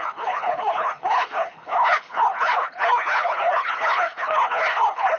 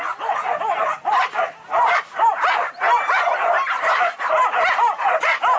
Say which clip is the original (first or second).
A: second